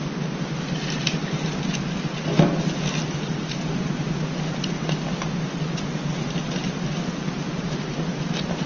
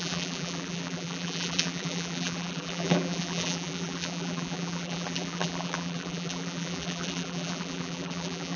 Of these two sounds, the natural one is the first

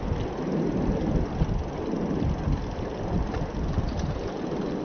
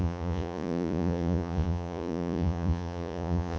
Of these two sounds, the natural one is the first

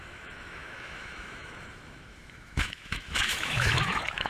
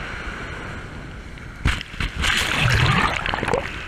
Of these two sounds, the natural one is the second